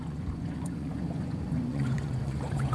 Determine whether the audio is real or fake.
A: fake